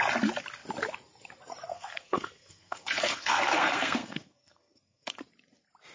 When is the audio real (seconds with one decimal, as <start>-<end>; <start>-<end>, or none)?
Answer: 0.0-1.7; 5.2-5.9